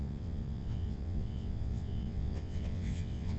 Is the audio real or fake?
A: fake